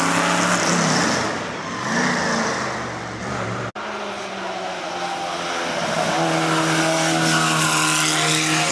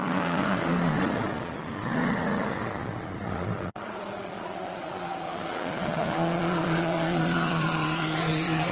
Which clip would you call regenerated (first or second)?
second